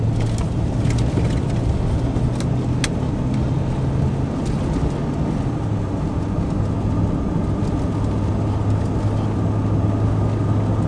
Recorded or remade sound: recorded